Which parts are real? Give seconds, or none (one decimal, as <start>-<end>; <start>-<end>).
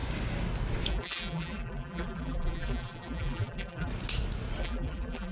0.0-0.9; 3.9-4.6